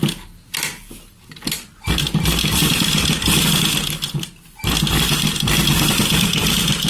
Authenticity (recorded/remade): recorded